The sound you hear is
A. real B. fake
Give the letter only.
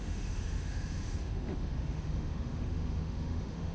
B